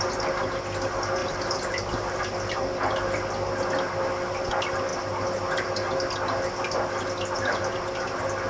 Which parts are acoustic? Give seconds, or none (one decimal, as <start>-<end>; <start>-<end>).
0.0-1.2; 2.2-8.5

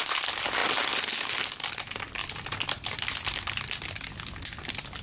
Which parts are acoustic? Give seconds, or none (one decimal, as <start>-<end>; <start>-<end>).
0.0-5.0

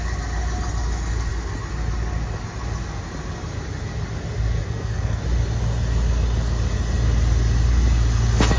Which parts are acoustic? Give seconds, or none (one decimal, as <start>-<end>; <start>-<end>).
0.0-4.6; 5.2-8.6

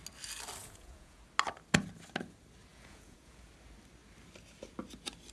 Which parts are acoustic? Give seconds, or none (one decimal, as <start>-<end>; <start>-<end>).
0.0-0.6; 1.2-2.7; 3.5-5.3

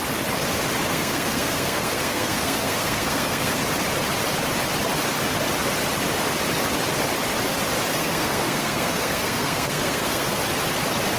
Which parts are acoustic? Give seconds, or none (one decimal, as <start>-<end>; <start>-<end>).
0.0-0.9; 3.6-7.9; 10.4-11.2

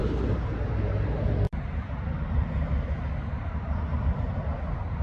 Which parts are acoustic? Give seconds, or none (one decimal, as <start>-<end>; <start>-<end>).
0.0-5.0